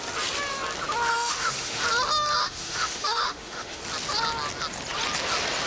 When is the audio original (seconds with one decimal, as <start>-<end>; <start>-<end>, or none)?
0.0-1.1; 1.8-2.4; 3.8-5.7